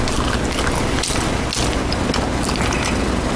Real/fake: real